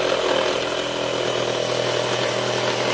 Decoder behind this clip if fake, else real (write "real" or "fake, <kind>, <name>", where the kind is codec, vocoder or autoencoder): real